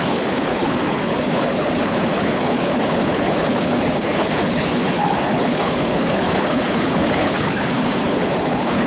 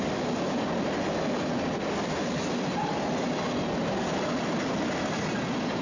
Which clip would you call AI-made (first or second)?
first